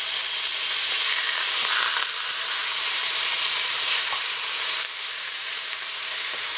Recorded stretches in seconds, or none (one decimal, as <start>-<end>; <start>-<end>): 0.0-2.6